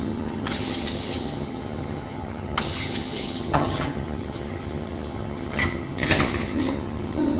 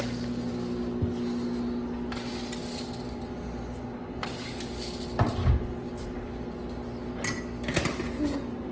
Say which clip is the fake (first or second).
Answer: first